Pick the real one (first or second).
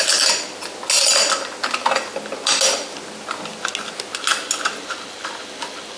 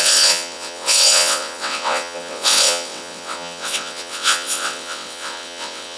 first